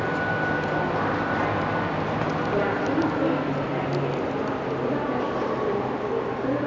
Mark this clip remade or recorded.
recorded